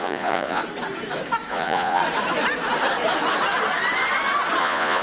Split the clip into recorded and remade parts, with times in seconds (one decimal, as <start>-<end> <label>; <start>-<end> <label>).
0.0-0.6 remade; 0.6-1.5 recorded; 1.5-2.0 remade; 2.0-4.6 recorded; 4.6-5.0 remade